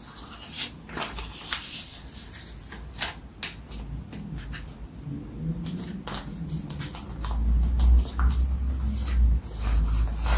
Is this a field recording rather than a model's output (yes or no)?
yes